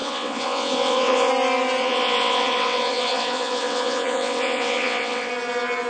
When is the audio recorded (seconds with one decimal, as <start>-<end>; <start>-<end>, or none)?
1.3-1.8; 5.3-5.9